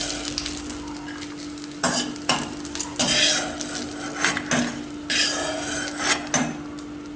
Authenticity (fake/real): real